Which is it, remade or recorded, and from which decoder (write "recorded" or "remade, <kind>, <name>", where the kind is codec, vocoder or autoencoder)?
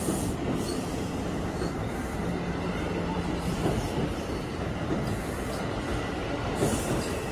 recorded